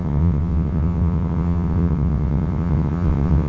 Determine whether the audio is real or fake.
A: fake